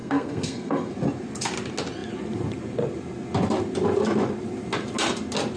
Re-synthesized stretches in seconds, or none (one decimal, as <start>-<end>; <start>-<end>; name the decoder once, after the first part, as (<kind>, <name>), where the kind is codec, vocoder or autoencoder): 0.0-0.9 (codec, SNAC)